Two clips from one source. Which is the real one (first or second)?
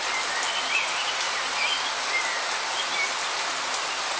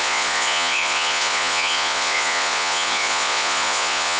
first